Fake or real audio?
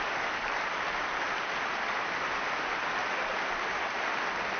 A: real